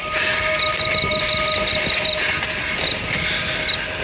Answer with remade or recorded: recorded